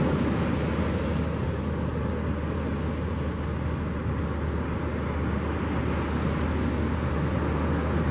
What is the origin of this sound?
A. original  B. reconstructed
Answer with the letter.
A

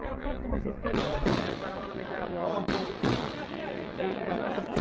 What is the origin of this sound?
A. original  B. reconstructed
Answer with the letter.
B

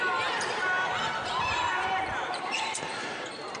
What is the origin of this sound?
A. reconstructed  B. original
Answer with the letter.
A